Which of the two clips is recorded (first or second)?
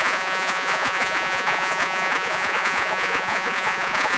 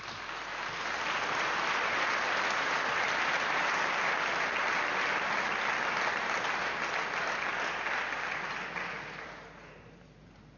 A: second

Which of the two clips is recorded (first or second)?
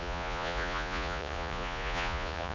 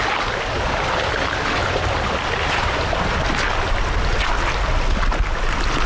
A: second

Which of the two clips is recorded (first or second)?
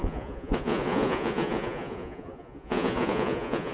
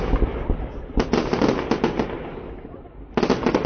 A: second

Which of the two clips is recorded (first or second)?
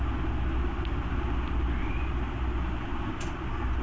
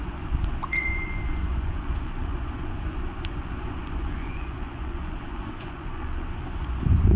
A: first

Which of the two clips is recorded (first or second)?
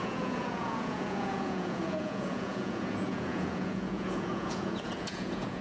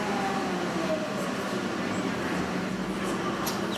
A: second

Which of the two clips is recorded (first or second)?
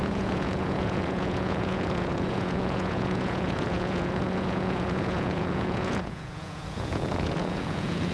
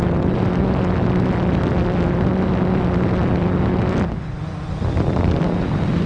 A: second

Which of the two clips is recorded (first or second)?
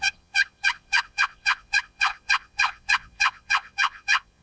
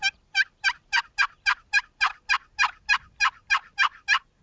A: second